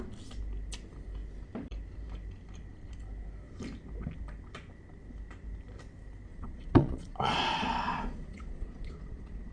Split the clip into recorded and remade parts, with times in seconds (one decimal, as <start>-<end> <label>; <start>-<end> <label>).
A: 0.0-6.3 recorded; 6.3-9.5 remade

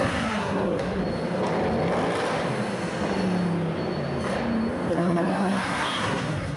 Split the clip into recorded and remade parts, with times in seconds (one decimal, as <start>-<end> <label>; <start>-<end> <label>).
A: 0.0-1.0 remade; 1.0-4.9 recorded; 4.9-6.6 remade

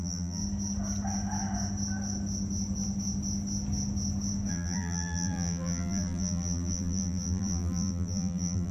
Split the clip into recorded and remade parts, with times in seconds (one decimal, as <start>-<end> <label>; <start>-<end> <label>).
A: 0.0-0.4 remade; 0.4-4.5 recorded; 4.5-8.7 remade